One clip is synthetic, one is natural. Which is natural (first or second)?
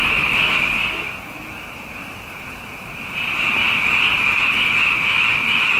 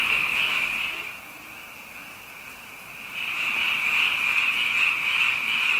second